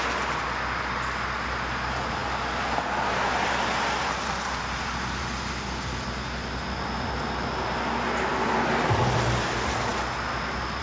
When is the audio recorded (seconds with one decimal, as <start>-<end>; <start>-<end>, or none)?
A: 0.0-10.8